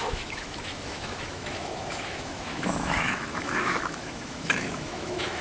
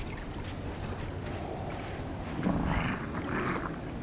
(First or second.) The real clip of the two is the second